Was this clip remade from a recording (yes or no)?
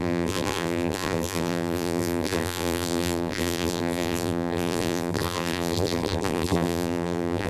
yes